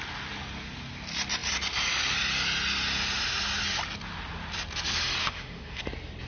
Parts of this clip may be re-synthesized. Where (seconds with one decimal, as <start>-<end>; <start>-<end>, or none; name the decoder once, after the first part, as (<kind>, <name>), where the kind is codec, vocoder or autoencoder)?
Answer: 5.2-5.8 (autoencoder, DAC-VAE)